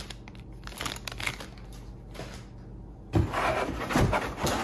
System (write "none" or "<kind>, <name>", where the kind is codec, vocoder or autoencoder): none